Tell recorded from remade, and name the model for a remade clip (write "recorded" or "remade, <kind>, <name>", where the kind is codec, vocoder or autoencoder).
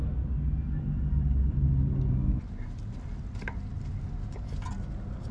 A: recorded